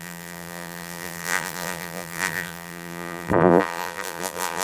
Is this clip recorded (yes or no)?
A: no